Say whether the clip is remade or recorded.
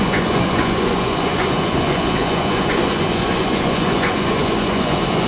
remade